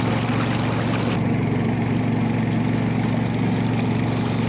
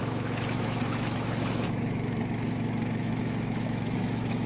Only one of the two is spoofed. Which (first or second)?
second